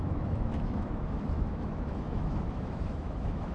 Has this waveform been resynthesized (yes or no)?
yes